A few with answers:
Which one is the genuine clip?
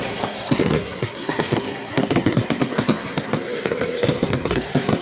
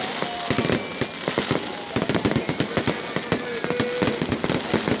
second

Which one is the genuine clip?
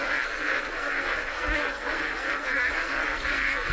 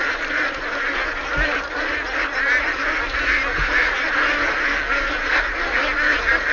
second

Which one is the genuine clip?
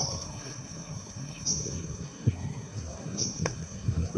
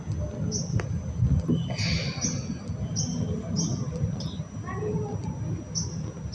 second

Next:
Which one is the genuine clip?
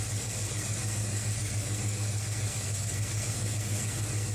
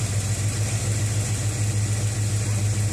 second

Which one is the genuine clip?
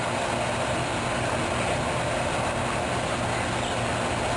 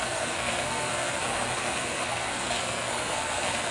first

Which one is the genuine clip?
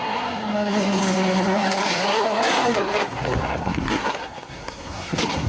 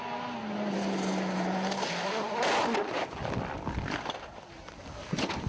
second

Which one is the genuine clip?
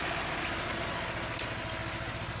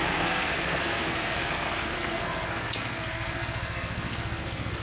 first